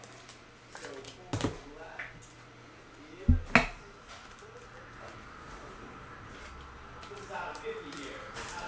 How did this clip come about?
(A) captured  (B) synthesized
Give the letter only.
A